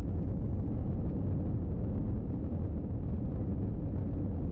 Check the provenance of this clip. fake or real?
real